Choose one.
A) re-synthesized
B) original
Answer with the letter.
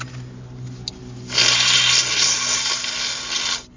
B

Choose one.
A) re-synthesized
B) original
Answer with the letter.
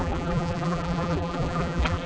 A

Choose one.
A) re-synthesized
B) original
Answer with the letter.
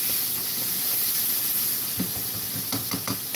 B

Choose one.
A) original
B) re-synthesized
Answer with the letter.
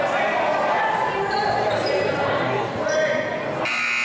A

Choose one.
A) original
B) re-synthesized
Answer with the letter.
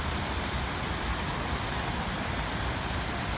A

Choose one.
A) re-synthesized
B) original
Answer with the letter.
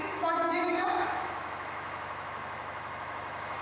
A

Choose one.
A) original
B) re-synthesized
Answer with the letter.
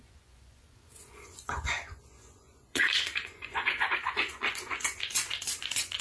B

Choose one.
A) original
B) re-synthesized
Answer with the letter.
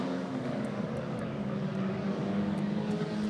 B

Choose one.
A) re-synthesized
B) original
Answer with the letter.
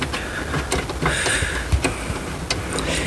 B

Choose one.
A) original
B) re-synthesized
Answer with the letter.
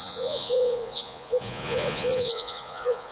B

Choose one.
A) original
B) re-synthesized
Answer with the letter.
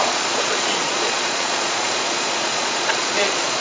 B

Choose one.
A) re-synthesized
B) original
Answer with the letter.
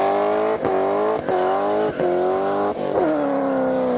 B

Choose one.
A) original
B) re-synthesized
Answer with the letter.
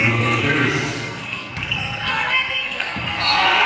B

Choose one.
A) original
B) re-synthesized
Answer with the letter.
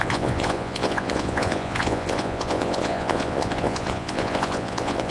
B